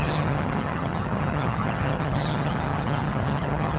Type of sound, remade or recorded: remade